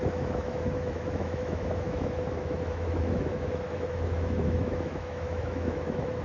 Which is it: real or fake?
fake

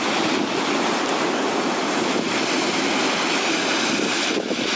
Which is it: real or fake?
real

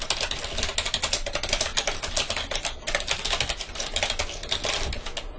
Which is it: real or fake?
real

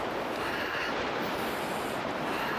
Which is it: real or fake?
real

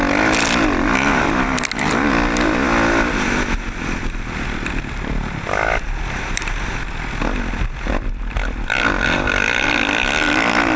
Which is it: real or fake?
real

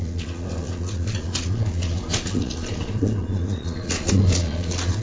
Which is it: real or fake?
fake